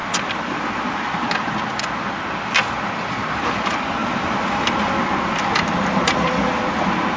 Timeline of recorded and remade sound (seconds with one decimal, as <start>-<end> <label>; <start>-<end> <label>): 0.0-7.2 recorded